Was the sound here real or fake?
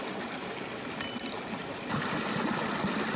real